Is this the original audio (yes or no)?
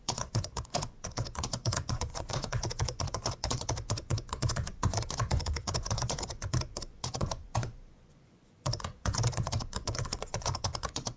no